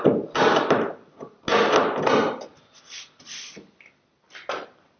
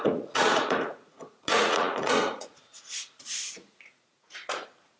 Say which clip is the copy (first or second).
second